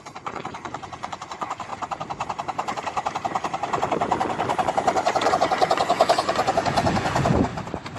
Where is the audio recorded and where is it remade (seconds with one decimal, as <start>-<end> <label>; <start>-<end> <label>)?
0.0-1.7 remade; 1.7-5.3 recorded; 5.3-7.5 remade; 7.5-8.0 recorded